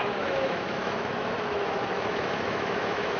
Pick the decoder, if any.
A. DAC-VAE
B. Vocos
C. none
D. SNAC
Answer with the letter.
A